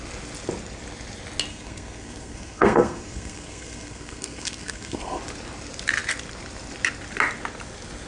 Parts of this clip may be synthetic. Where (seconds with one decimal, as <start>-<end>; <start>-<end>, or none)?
1.5-5.2